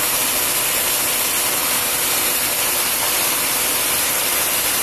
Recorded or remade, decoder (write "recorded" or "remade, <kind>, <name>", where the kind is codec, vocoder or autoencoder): recorded